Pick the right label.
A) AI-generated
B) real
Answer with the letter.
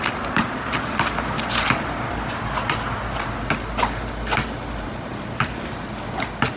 B